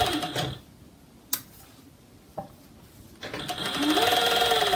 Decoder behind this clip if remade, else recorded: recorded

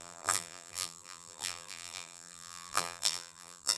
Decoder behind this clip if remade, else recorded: remade, vocoder, BigVGAN v2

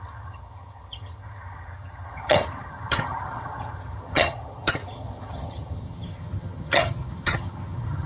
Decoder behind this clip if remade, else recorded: remade, vocoder, HiFi-GAN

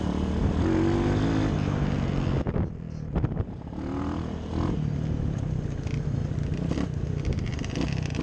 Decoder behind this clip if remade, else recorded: recorded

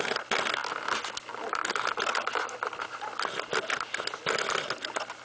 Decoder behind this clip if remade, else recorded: recorded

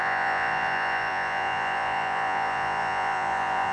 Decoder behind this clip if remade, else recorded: remade, vocoder, Vocos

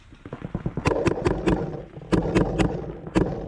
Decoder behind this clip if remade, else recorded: recorded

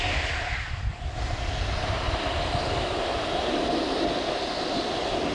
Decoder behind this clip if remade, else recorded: recorded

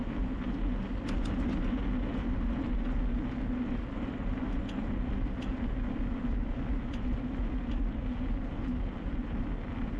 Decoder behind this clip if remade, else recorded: recorded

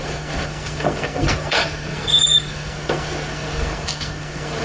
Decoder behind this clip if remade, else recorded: remade, codec, SNAC